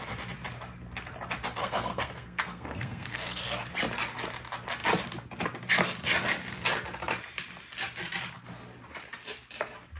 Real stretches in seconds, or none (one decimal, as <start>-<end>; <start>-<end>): 0.0-1.6; 3.7-10.0